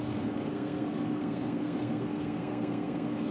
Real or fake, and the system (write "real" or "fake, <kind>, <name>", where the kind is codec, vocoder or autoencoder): fake, codec, SNAC